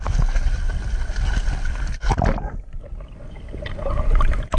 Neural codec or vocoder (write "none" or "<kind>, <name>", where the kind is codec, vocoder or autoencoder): none